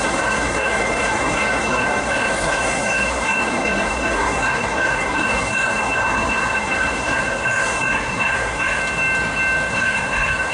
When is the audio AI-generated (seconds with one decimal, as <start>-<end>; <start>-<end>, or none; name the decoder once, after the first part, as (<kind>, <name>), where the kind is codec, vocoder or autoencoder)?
0.0-8.8 (codec, SNAC); 9.7-10.5